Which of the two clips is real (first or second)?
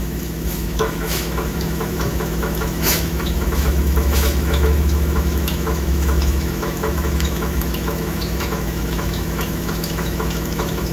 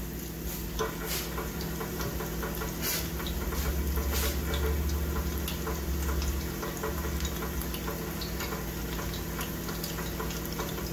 second